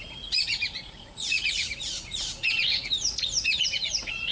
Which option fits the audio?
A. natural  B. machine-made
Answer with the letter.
B